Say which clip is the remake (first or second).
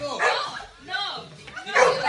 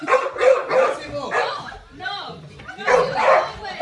second